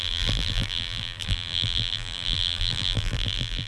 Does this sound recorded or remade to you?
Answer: remade